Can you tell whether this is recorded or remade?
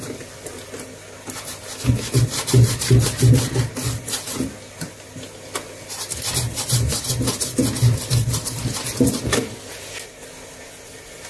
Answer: recorded